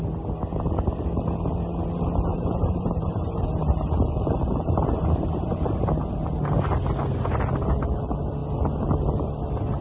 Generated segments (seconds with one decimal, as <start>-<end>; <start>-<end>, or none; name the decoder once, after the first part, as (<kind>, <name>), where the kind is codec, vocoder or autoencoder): 2.3-6.6 (vocoder, BigVGAN v2)